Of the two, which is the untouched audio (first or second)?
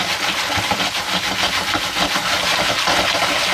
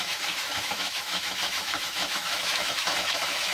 first